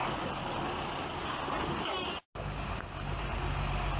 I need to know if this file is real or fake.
real